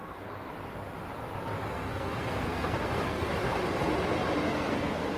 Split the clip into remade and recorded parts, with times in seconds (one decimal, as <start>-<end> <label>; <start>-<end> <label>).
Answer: 0.0-0.5 remade; 0.5-1.7 recorded; 1.7-3.3 remade; 3.3-4.5 recorded; 4.5-5.2 remade